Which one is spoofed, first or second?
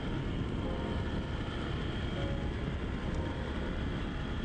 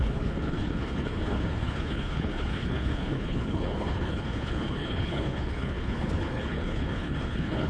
second